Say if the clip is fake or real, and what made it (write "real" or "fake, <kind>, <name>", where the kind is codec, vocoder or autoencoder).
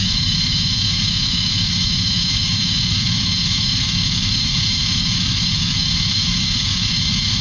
fake, autoencoder, DAC-VAE